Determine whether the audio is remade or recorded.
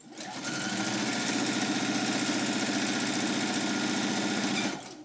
recorded